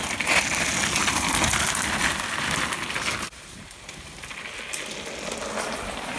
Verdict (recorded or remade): recorded